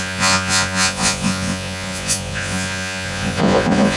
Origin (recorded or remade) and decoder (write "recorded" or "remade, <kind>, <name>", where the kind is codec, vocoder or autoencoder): remade, vocoder, Vocos